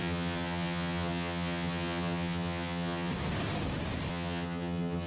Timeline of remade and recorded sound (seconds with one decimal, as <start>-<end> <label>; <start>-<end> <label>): 0.0-3.1 remade; 3.1-4.1 recorded; 4.1-5.1 remade